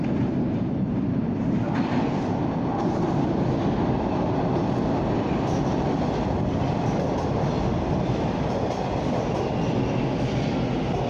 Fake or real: real